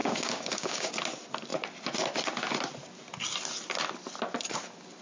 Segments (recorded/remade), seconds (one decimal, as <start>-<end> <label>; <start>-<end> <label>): 0.0-0.9 remade; 0.9-5.0 recorded